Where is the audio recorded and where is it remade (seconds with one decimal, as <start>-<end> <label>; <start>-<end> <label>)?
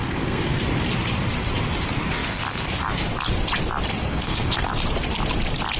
0.0-0.6 remade; 0.6-4.1 recorded; 4.1-4.7 remade; 4.7-5.8 recorded